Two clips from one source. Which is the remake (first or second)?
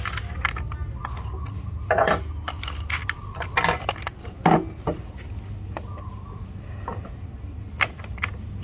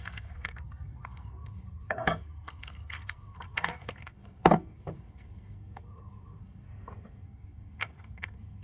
second